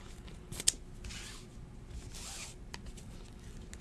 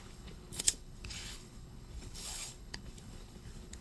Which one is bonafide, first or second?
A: first